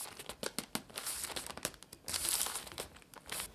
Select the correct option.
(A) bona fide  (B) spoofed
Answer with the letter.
A